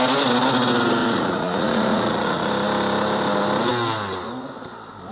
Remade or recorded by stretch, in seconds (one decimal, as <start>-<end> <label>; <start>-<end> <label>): 0.0-1.0 recorded; 1.0-2.5 remade; 2.5-5.1 recorded